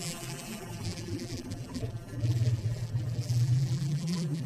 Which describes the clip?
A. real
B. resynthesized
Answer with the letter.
B